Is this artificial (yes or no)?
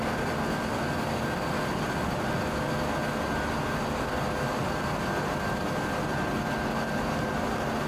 no